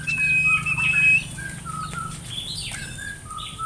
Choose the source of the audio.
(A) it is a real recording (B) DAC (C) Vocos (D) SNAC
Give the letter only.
A